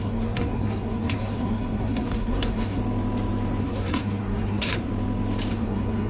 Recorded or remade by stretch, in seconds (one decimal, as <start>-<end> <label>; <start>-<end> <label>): 0.0-2.8 remade; 2.8-3.6 recorded; 3.6-4.9 remade; 4.9-5.5 recorded; 5.5-6.1 remade